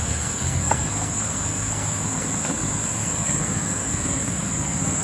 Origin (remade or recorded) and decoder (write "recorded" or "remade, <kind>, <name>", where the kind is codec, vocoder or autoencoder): remade, codec, SNAC